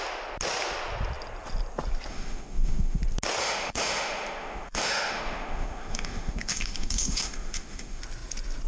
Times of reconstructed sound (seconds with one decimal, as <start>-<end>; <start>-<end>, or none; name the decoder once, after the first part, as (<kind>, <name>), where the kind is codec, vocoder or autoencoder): 2.1-3.0 (autoencoder, DAC-VAE); 3.4-8.0